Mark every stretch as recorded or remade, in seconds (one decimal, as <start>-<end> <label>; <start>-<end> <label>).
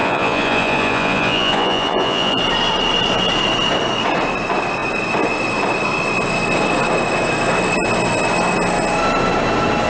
0.0-2.4 remade; 2.4-9.9 recorded